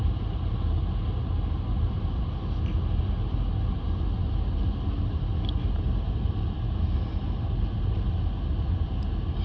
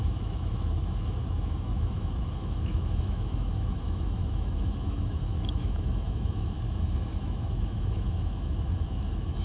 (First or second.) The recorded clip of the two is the first